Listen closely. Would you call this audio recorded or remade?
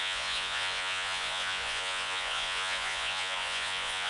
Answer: remade